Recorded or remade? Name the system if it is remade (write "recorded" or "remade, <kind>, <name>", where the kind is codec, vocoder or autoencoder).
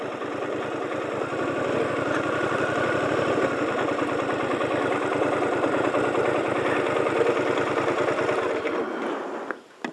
recorded